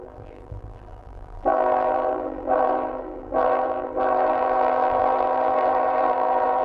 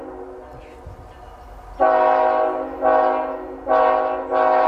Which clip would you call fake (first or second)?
first